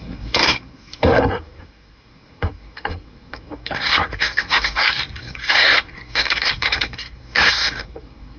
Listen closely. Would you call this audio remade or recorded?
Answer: remade